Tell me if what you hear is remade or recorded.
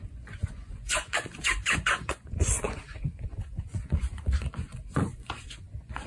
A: remade